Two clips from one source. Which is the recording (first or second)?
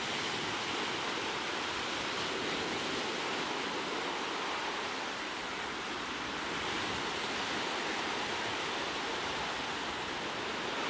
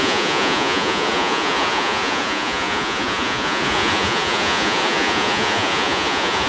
first